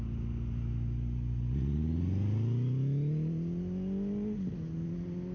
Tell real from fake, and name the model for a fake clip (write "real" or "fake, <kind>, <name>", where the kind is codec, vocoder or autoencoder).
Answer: real